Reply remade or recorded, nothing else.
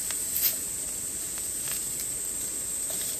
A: recorded